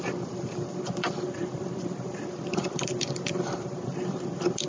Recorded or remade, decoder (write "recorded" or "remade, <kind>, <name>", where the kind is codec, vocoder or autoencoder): remade, vocoder, BigVGAN v2